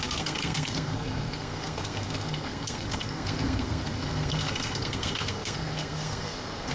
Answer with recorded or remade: remade